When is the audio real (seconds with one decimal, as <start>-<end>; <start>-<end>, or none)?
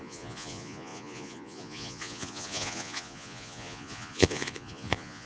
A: none